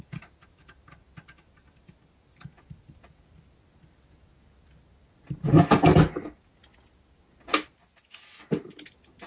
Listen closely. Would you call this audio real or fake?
real